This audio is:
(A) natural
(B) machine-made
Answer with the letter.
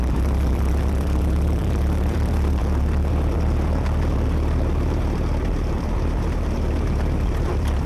B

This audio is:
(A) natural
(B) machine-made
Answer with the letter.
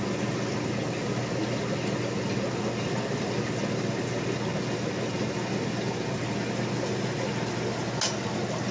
A